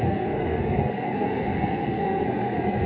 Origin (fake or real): fake